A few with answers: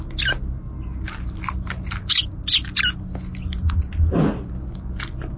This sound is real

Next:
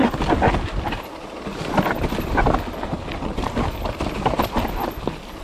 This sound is real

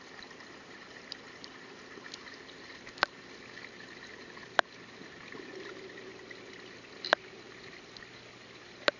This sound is real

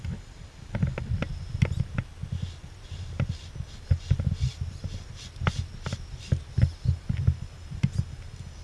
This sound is real